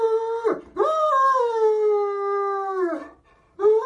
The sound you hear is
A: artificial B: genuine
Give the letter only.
B